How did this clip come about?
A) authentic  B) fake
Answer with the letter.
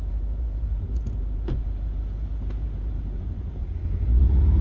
B